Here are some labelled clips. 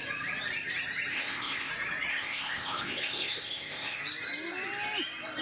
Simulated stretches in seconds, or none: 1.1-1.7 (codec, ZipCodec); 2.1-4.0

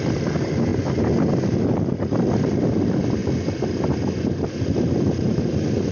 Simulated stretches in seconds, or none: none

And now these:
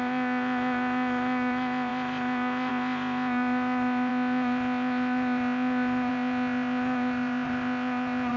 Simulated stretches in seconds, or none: 0.0-8.4 (codec, ZipCodec)

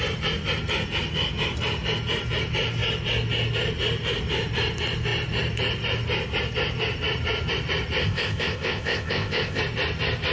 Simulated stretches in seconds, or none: 8.0-9.6 (codec, ZipCodec)

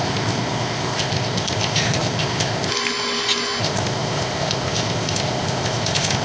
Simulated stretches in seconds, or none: 0.0-2.7 (codec, ZipCodec); 3.6-6.2

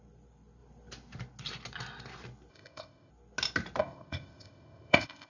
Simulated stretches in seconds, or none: 2.5-3.1 (codec, ZipCodec); 3.8-5.3